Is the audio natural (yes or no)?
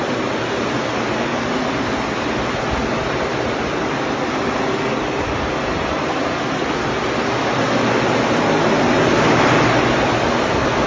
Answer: yes